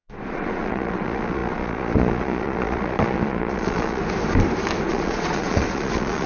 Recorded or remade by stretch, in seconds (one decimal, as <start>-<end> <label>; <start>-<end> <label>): 0.0-4.0 remade; 4.0-4.9 recorded; 4.9-6.3 remade